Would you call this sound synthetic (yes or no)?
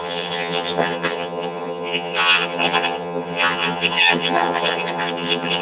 yes